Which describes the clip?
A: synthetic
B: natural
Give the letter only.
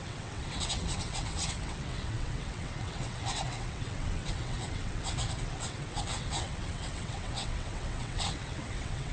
A